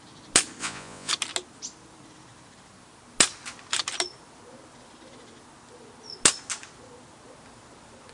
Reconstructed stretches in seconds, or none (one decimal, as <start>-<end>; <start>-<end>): 0.6-1.1

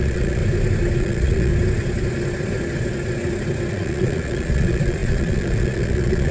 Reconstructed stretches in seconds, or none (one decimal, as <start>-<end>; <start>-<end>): 0.0-0.4; 1.0-1.5; 3.7-6.3

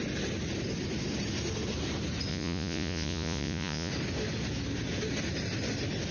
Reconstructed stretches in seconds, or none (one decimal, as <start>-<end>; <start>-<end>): 2.3-3.9